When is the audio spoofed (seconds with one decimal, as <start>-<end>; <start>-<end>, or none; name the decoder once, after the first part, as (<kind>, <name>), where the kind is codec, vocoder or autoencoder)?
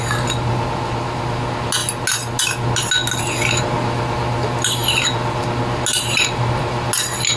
none